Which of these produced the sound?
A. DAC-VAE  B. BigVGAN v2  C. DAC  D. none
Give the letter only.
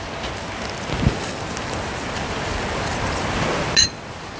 D